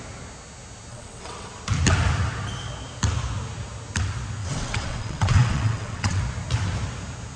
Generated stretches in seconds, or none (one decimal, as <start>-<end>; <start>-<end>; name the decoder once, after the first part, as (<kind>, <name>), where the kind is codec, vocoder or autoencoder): 0.9-1.5 (vocoder, WaveNeXt); 4.4-6.2